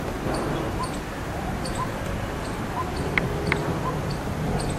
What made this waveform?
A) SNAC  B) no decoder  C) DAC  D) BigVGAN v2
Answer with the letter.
B